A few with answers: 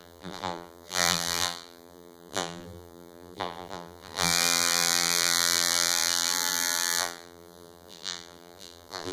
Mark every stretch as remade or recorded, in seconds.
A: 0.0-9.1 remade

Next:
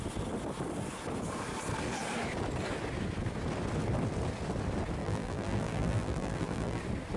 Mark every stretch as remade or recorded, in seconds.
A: 0.0-5.0 recorded; 5.0-6.8 remade; 6.8-7.2 recorded

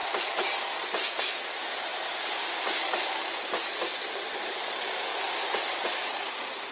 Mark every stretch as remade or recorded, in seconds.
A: 0.0-1.2 recorded; 1.2-5.1 remade; 5.1-6.0 recorded; 6.0-6.7 remade

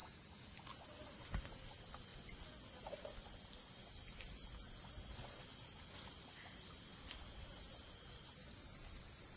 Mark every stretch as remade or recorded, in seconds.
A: 0.0-9.4 recorded

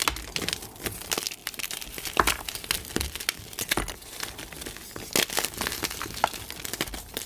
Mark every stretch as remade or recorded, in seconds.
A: 0.0-7.3 recorded

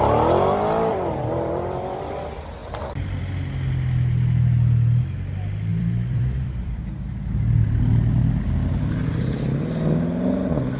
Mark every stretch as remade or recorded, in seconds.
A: 0.0-0.9 recorded; 0.9-2.0 remade; 2.0-5.7 recorded; 5.7-7.0 remade; 7.0-10.8 recorded

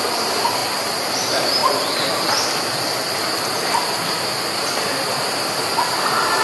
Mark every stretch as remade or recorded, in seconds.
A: 0.0-6.4 recorded

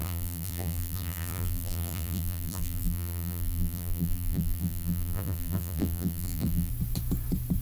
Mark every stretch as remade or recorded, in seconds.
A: 0.0-6.7 remade; 6.7-7.6 recorded